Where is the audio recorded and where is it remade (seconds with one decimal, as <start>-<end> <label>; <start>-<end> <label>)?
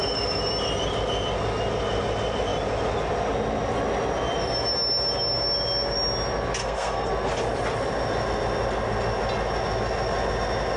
0.0-6.6 recorded; 6.6-7.1 remade; 7.1-10.8 recorded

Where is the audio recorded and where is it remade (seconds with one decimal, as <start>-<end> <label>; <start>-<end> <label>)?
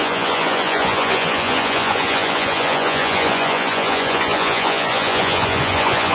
0.0-6.1 remade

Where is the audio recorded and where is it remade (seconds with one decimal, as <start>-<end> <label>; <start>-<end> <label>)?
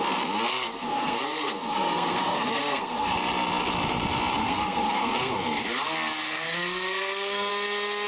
0.0-0.5 recorded; 0.5-3.1 remade; 3.1-4.4 recorded; 4.4-5.3 remade; 5.3-6.2 recorded; 6.2-7.5 remade; 7.5-8.1 recorded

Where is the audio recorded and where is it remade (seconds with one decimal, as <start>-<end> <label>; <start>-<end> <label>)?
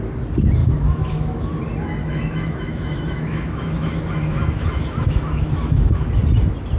0.0-0.6 recorded; 0.6-1.5 remade; 1.5-2.0 recorded; 2.0-6.1 remade; 6.1-6.8 recorded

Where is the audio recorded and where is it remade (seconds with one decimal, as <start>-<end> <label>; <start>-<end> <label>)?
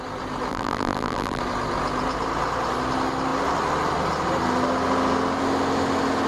0.0-0.5 recorded; 0.5-1.4 remade; 1.4-6.3 recorded